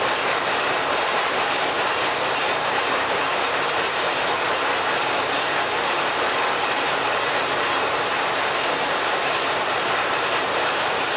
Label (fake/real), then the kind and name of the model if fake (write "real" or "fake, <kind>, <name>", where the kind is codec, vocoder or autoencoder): fake, vocoder, BigVGAN v2